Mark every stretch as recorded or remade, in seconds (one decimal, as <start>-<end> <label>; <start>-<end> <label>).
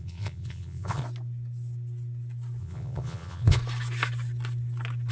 0.0-1.0 remade; 1.0-2.6 recorded; 2.6-3.6 remade; 3.6-5.1 recorded